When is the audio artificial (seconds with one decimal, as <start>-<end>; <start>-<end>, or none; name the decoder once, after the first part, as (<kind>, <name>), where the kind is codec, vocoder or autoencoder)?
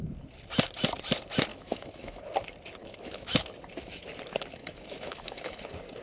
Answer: 1.5-2.2 (autoencoder, DAC-VAE); 2.8-3.4; 4.6-5.6